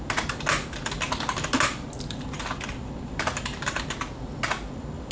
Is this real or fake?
real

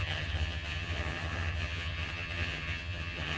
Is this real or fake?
fake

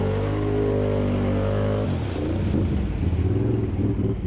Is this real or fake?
real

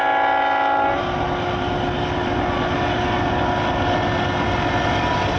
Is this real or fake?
real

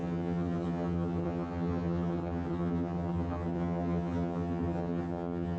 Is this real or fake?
fake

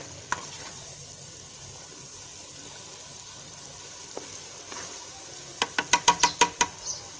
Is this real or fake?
real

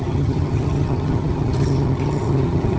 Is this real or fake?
fake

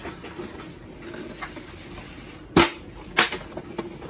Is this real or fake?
real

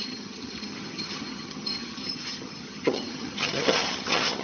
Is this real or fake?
fake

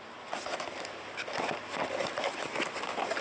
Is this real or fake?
real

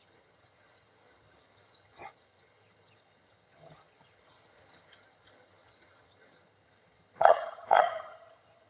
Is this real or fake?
fake